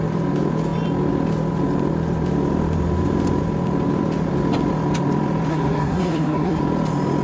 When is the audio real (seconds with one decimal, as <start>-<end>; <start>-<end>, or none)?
0.0-5.5; 6.6-7.2